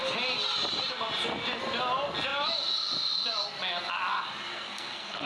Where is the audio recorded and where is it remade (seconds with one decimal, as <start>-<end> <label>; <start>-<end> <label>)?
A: 0.0-4.5 recorded; 4.5-5.3 remade